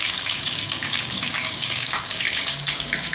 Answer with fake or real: fake